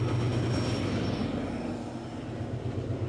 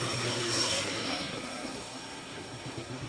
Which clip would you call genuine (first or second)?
first